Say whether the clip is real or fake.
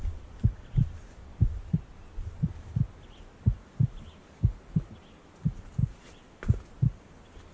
real